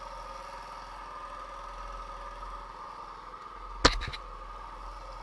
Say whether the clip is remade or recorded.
recorded